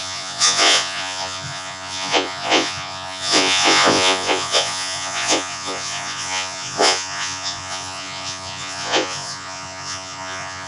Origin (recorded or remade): remade